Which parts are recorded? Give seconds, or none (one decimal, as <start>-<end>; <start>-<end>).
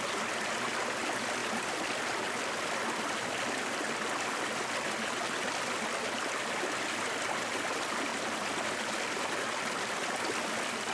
0.0-10.9